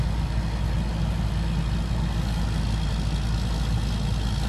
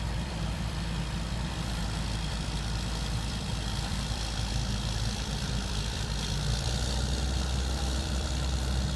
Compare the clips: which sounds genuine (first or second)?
first